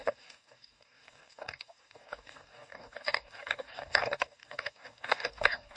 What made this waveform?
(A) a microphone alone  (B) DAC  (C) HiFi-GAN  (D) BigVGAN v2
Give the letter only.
B